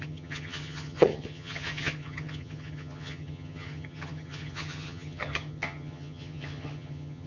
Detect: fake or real fake